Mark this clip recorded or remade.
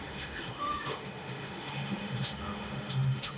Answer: remade